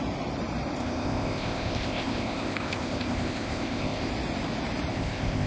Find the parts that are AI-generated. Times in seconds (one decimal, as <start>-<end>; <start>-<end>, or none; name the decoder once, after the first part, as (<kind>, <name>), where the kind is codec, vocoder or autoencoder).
0.8-4.1 (codec, ZipCodec); 4.9-5.5